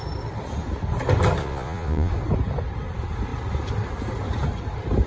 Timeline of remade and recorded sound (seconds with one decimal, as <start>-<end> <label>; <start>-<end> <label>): 0.0-1.4 recorded; 1.4-2.1 remade; 2.1-5.1 recorded